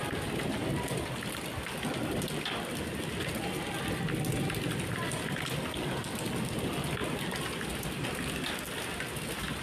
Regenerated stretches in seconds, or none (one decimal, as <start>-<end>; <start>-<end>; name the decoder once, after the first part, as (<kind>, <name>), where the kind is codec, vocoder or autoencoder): none